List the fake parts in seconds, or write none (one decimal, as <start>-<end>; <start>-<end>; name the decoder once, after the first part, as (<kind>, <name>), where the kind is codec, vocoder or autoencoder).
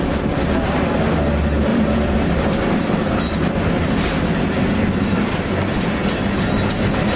1.7-3.9 (vocoder, BigVGAN v2); 6.0-6.7